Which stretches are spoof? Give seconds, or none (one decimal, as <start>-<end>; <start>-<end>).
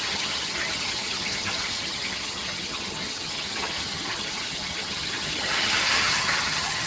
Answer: 0.0-6.9